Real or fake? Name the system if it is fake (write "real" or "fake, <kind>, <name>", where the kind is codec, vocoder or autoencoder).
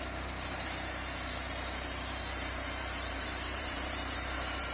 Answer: fake, vocoder, BigVGAN v2